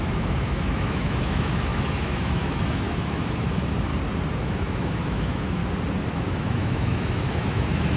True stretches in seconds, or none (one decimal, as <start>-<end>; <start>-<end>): 3.9-4.4; 5.6-6.1